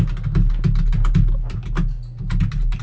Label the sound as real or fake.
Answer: real